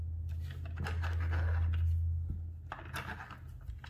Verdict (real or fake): real